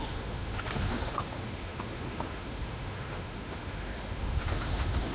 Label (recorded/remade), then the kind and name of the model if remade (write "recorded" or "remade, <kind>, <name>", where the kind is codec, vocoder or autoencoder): remade, autoencoder, DAC-VAE